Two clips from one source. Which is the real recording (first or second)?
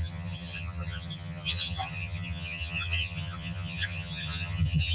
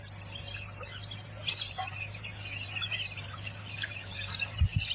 second